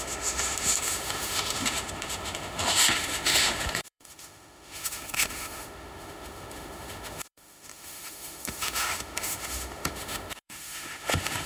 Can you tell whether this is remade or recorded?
remade